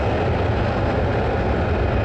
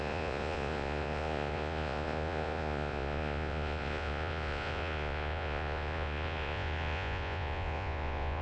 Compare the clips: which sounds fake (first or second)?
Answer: second